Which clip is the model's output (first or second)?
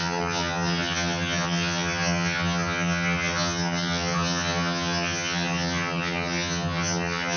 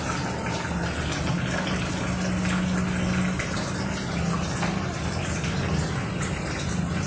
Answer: first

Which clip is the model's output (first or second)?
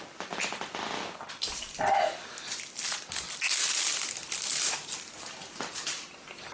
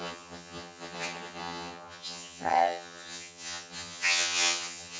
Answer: second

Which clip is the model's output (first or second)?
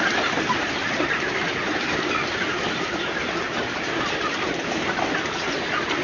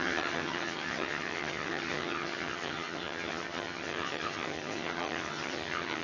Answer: second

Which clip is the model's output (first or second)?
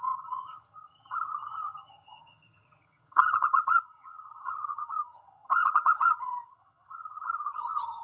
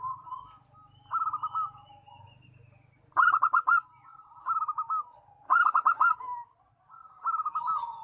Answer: first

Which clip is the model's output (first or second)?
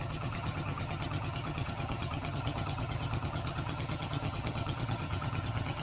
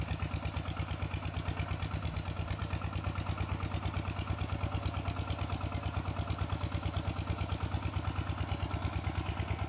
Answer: first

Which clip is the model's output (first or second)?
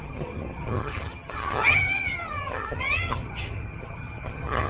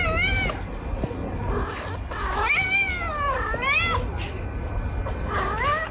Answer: first